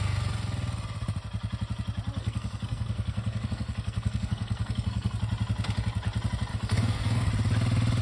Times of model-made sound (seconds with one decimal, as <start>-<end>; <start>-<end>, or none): 2.2-5.2; 6.5-7.3